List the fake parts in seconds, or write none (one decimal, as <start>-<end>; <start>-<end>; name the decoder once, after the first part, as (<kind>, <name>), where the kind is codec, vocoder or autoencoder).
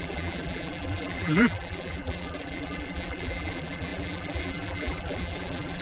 0.0-5.8 (vocoder, BigVGAN v2)